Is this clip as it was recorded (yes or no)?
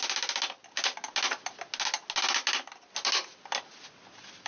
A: yes